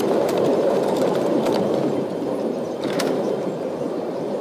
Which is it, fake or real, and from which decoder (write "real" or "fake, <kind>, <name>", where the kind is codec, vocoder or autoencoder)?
fake, vocoder, BigVGAN v2